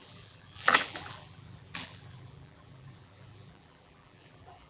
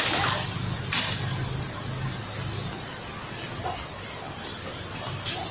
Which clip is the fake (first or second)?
first